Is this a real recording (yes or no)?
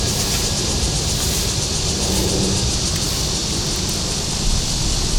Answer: yes